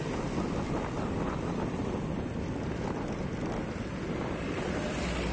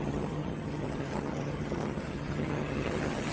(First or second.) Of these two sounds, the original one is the first